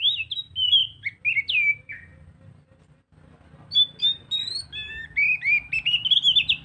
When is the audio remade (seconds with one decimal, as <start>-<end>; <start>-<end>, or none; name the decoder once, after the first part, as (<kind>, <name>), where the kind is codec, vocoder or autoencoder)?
none